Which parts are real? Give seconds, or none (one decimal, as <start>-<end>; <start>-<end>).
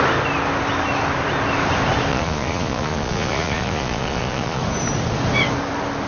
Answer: 0.0-2.1; 4.6-6.1